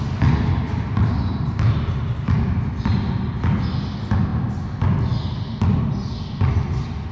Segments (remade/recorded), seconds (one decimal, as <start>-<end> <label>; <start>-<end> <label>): 0.0-7.1 recorded